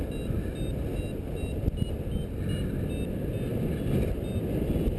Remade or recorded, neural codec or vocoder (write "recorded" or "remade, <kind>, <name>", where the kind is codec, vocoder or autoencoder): recorded